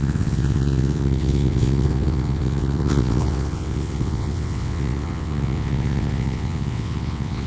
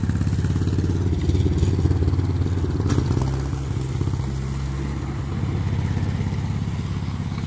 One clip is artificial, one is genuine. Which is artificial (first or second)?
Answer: first